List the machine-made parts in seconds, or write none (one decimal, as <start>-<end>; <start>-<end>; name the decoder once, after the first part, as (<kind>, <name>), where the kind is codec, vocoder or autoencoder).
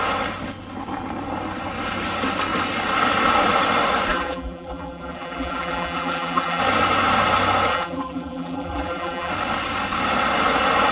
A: 4.1-6.6 (vocoder, BigVGAN v2); 7.7-9.3